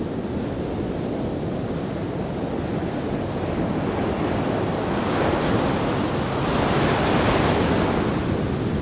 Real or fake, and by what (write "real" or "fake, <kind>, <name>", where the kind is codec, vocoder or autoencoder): real